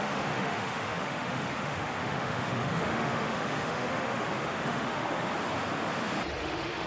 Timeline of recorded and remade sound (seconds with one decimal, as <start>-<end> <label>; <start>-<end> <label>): 0.0-5.3 remade; 5.3-6.4 recorded; 6.4-6.9 remade